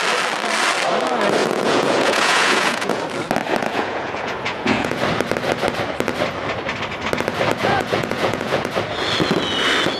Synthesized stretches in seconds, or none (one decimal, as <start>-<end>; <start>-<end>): 1.4-3.0; 3.6-5.0; 7.6-8.7